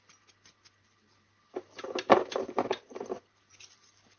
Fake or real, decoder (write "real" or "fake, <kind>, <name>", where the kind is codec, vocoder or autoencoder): real